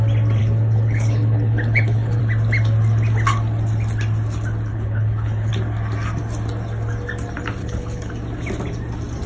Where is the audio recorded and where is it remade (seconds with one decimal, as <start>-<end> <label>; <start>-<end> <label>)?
0.0-0.4 recorded; 0.4-2.2 remade; 2.2-4.7 recorded; 4.7-5.5 remade; 5.5-7.6 recorded; 7.6-8.1 remade; 8.1-9.3 recorded